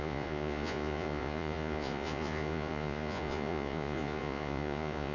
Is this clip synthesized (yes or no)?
yes